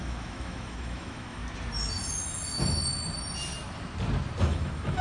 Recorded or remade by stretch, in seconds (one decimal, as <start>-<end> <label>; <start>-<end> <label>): 0.0-1.4 remade; 1.4-4.4 recorded; 4.4-5.0 remade